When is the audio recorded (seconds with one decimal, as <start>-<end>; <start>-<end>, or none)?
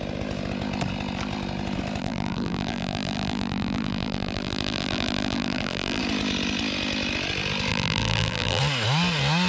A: 0.0-2.0; 6.0-7.7; 8.6-9.5